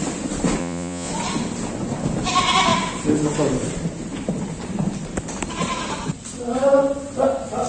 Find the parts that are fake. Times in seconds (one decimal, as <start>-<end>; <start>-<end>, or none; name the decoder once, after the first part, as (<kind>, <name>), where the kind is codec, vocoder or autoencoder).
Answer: 0.6-1.1 (vocoder, Vocos)